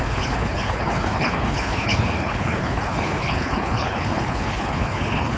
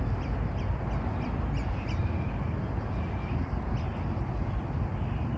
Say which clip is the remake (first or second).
first